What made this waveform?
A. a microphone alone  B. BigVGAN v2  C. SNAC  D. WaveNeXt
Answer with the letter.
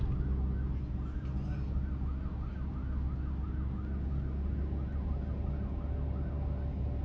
A